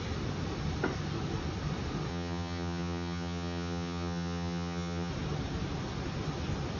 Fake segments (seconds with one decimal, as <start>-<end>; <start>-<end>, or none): 2.1-5.1